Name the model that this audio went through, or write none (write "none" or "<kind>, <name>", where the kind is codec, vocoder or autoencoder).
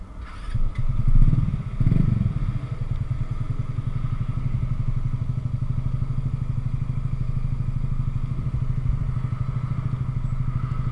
none